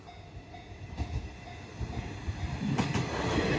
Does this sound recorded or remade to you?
recorded